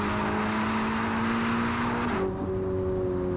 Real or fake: real